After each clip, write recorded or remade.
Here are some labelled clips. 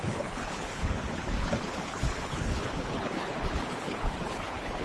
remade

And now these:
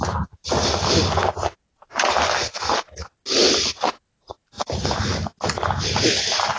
recorded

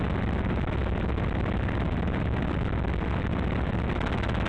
recorded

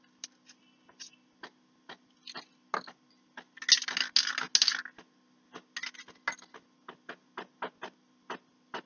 recorded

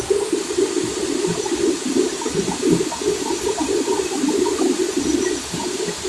recorded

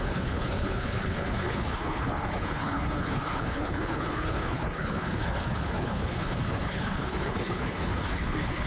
remade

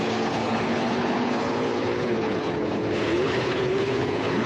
remade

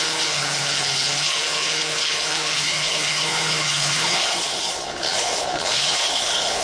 remade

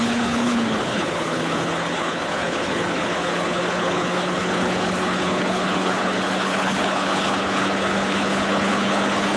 remade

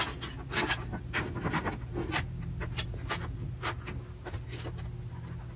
recorded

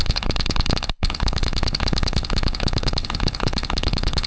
remade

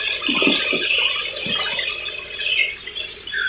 recorded